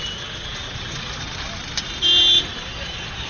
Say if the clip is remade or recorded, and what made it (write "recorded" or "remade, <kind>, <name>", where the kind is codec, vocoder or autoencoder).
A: recorded